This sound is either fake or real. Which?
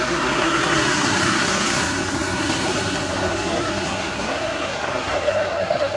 fake